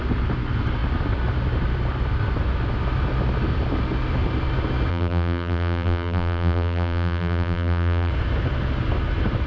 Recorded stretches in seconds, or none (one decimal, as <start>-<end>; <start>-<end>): 0.0-4.9; 8.1-9.5